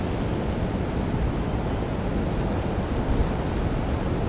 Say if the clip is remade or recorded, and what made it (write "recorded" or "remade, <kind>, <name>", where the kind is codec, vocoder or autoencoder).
recorded